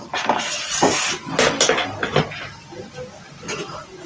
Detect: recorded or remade recorded